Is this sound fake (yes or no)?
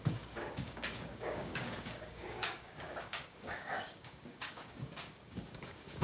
yes